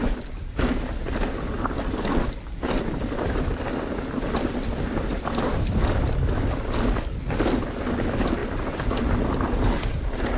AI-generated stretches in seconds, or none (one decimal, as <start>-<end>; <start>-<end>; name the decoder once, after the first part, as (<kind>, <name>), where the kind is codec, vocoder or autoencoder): none